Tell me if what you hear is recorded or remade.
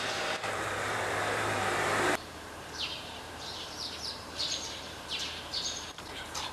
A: remade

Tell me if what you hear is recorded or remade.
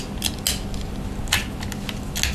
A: recorded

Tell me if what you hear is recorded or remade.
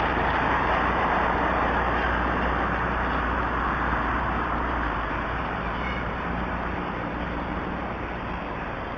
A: remade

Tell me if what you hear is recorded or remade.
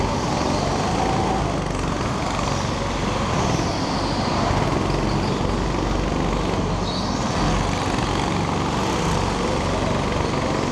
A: recorded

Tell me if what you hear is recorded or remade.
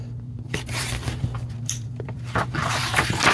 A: remade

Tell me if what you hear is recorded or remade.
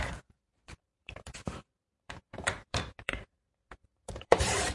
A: remade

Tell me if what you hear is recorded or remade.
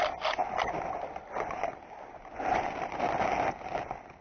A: recorded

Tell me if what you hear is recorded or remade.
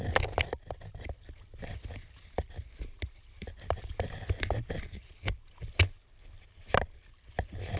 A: recorded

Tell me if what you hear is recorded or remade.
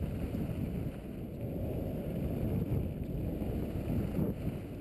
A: recorded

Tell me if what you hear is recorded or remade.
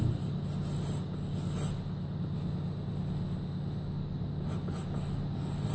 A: recorded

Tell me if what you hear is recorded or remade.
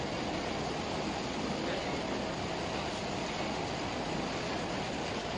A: recorded